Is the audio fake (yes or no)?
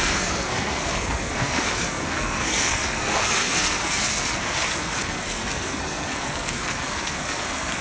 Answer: yes